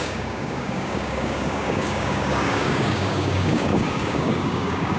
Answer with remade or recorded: remade